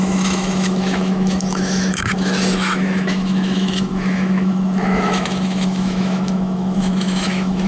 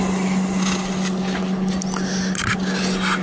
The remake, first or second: first